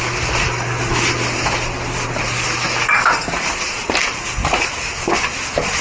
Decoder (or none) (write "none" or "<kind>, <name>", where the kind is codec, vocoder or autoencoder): none